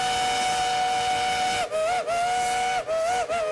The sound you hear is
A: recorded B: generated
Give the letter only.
A